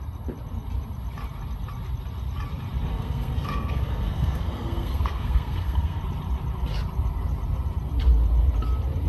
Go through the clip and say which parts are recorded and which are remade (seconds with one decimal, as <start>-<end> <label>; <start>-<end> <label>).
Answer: 0.0-2.9 recorded; 2.9-6.0 remade; 6.0-9.1 recorded